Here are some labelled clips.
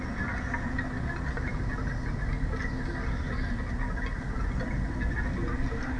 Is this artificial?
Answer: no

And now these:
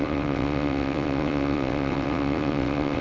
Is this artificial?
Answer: yes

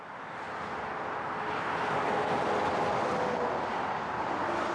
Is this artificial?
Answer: no